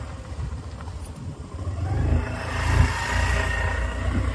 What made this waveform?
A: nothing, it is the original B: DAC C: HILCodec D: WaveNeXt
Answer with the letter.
A